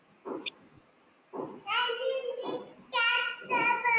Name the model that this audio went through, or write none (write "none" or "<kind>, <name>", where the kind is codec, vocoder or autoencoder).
none